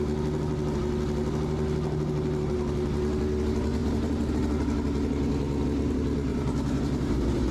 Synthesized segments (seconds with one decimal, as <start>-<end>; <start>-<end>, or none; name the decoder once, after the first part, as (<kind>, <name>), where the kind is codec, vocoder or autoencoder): 3.8-4.3 (vocoder, BigVGAN v2); 6.3-7.1